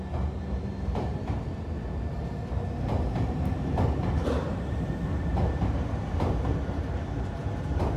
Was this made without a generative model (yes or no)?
no